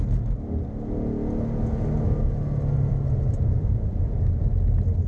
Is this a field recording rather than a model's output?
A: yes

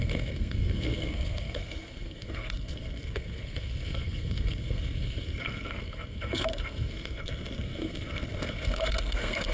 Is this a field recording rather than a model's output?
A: no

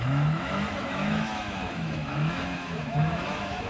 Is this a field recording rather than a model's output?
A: no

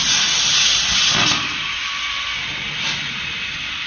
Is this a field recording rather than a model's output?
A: yes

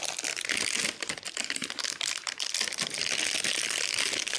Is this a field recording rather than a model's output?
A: yes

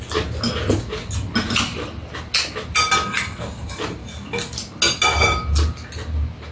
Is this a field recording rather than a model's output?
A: yes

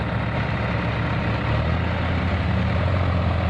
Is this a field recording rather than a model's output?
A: yes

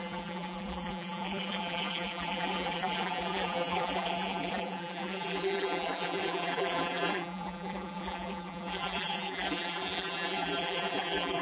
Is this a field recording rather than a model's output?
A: no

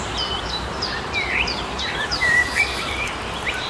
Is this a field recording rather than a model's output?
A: no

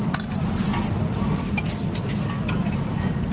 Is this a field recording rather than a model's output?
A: yes